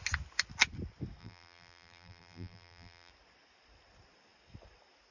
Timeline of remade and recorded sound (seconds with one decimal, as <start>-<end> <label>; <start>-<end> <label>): 0.0-1.2 recorded; 1.2-3.1 remade; 3.1-5.1 recorded